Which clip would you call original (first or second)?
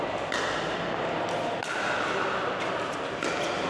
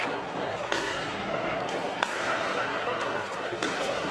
first